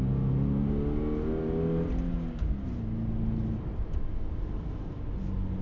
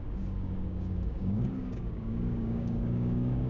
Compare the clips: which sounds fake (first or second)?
second